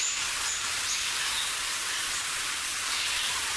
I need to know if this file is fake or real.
fake